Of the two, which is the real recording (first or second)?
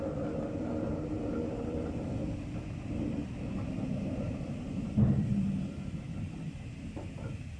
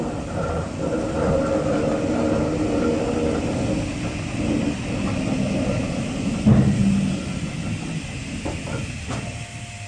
second